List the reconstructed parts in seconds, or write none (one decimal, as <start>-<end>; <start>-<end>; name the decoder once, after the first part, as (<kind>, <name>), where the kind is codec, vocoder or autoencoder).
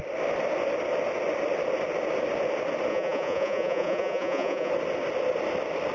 2.9-4.7 (vocoder, Vocos)